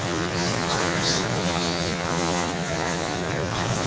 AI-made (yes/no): yes